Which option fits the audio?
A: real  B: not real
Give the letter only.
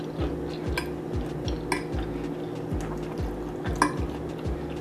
A